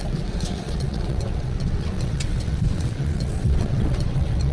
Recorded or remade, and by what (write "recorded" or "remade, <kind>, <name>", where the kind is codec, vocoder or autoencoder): remade, vocoder, WaveNeXt